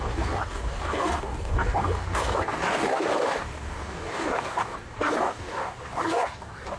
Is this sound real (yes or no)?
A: no